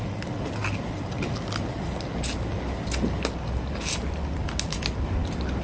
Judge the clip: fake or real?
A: real